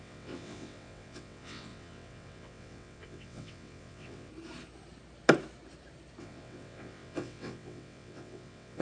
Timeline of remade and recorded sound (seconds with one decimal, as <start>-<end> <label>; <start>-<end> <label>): 0.0-4.3 remade; 4.3-6.2 recorded; 6.2-8.8 remade